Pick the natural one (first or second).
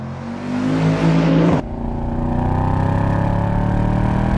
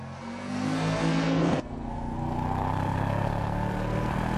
first